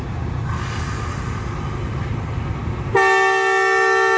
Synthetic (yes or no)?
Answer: no